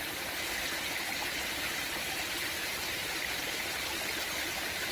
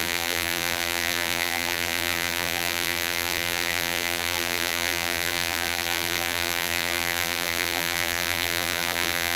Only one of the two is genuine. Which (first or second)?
first